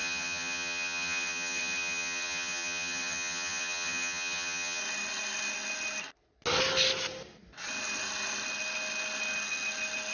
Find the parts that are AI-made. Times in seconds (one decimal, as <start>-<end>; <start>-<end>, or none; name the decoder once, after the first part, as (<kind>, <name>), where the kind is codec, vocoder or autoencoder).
0.0-4.8 (vocoder, HiFi-GAN)